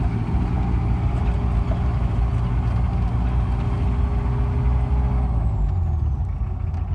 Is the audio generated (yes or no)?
no